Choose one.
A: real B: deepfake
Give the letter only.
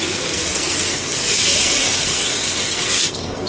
B